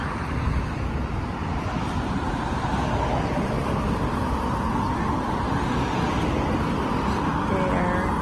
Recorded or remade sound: recorded